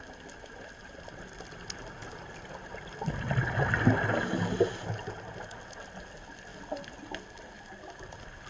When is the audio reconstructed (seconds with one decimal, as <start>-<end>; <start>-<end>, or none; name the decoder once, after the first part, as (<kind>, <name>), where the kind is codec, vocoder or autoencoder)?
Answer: none